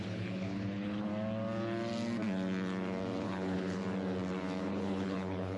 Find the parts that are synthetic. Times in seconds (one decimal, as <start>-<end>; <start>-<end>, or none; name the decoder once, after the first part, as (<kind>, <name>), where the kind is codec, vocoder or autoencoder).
0.0-1.1 (codec, HILCodec); 3.2-3.8; 4.6-5.6